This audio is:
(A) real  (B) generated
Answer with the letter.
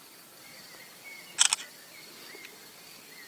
A